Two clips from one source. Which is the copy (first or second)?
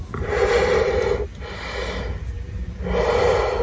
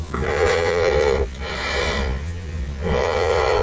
second